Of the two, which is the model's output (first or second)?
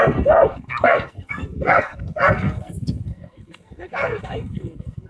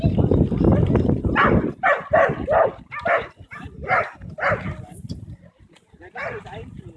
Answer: first